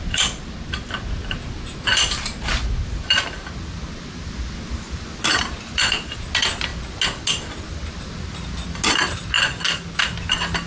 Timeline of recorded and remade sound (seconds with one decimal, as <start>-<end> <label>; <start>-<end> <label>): 0.0-10.7 recorded